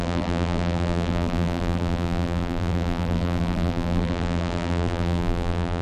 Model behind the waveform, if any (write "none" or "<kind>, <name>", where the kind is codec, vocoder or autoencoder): vocoder, BigVGAN v2